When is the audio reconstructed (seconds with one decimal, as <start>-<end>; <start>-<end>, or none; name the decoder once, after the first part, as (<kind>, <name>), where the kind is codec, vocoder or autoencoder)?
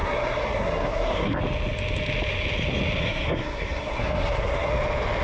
0.0-1.4 (codec, SNAC); 3.0-4.7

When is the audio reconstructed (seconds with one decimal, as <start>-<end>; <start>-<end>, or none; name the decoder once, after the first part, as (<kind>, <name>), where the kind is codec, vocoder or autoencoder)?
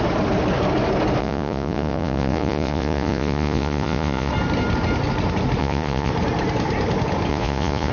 1.2-4.3 (vocoder, Vocos); 5.6-6.1; 7.3-7.9